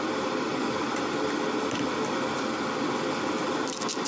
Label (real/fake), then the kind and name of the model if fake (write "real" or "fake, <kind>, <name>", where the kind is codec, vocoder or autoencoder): real